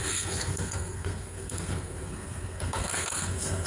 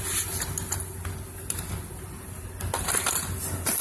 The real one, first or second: second